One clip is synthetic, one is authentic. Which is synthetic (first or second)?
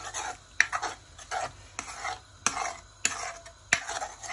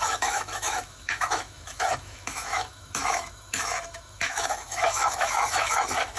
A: second